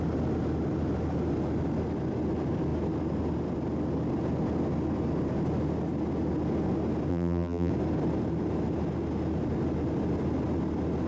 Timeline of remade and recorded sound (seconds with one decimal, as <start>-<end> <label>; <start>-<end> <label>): 0.0-7.1 recorded; 7.1-7.7 remade; 7.7-11.1 recorded